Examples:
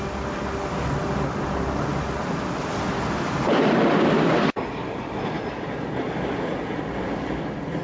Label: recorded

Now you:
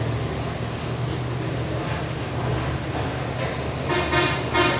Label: recorded